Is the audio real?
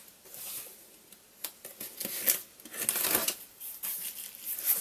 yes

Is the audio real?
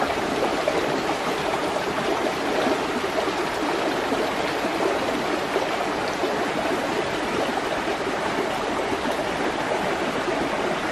no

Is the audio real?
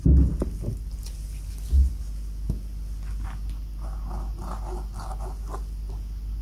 yes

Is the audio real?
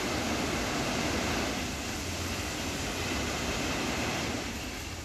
yes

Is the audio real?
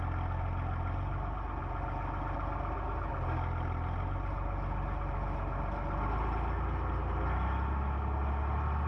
yes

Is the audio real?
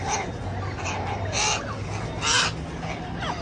yes